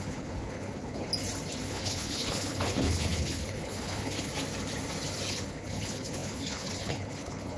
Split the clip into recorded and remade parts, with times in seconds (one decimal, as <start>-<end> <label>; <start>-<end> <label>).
0.0-1.1 remade; 1.1-1.7 recorded; 1.7-4.3 remade; 4.3-5.3 recorded; 5.3-7.6 remade